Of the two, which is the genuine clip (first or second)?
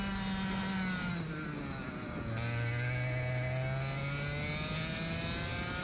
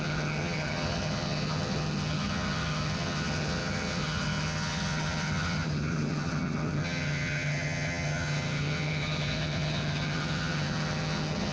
first